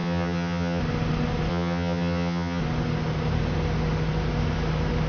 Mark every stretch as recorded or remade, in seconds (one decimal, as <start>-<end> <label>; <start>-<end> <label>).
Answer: 0.0-0.8 remade; 0.8-1.5 recorded; 1.5-2.6 remade; 2.6-5.1 recorded